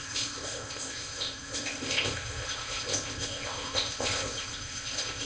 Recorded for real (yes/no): no